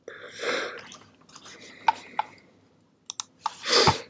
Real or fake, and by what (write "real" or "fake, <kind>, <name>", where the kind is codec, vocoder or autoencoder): real